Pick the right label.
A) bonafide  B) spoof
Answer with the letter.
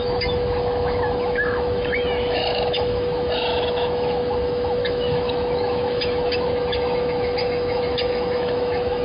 B